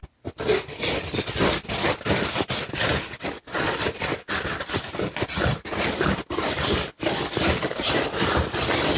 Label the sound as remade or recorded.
recorded